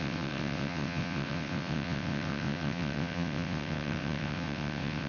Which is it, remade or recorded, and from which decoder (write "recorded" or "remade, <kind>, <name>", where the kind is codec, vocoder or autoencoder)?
remade, vocoder, WaveNeXt